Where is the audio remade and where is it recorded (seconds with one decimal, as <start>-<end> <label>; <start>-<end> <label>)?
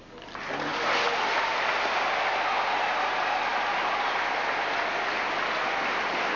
0.0-6.4 recorded